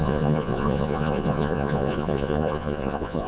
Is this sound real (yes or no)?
no